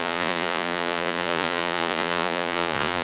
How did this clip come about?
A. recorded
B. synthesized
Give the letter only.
B